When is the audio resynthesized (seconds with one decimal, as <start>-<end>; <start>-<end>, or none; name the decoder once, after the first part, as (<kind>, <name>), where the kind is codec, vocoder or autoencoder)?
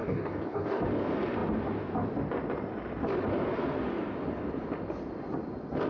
0.0-0.8 (codec, DAC)